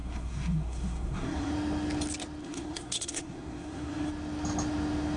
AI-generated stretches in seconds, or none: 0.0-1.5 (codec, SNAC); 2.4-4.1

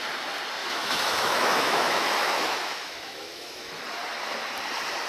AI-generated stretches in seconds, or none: 0.6-3.7 (autoencoder, DAC-VAE)

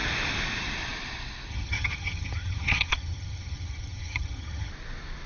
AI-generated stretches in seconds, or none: 1.5-4.7 (vocoder, HiFi-GAN)

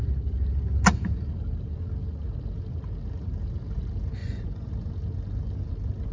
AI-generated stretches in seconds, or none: 4.2-4.7 (vocoder, Vocos)

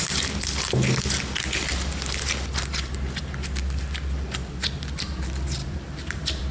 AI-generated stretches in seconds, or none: 5.6-6.5 (vocoder, BigVGAN v2)

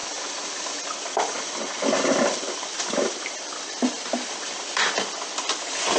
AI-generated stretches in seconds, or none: 0.9-6.0 (vocoder, BigVGAN v2)